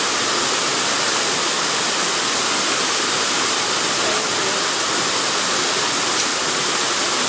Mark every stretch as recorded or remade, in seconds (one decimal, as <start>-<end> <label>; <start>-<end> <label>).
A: 0.0-6.3 recorded; 6.3-7.3 remade